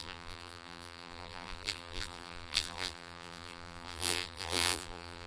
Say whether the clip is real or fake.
fake